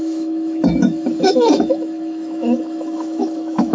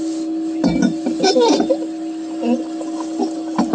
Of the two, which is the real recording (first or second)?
second